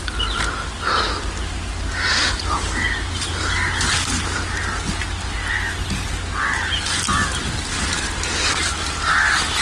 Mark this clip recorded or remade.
recorded